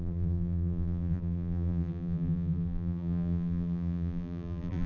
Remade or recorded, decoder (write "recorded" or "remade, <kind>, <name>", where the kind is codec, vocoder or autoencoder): remade, vocoder, BigVGAN v2